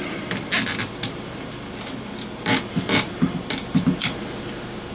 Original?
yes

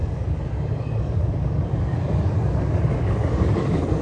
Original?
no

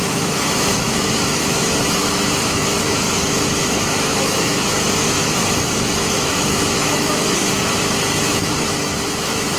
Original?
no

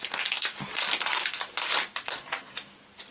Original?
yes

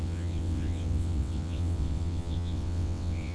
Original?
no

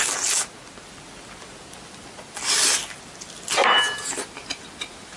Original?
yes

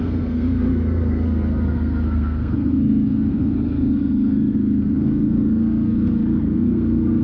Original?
no